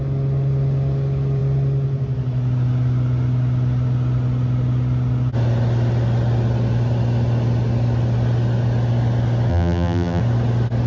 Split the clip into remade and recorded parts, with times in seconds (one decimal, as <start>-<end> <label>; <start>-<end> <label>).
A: 0.0-9.5 recorded; 9.5-10.2 remade; 10.2-10.9 recorded